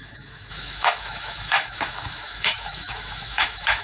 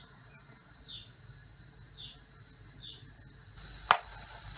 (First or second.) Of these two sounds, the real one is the second